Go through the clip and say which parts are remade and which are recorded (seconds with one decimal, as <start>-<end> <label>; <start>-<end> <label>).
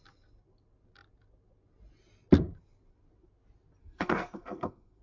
0.0-3.8 recorded; 3.8-5.0 remade